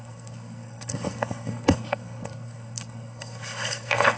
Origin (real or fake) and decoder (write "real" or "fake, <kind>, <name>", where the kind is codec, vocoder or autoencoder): fake, codec, SNAC